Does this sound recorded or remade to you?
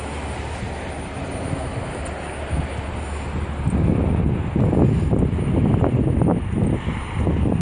recorded